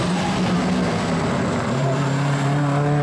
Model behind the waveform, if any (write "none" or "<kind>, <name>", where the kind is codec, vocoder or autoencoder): none